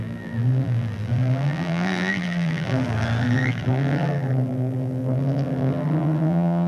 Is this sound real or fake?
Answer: fake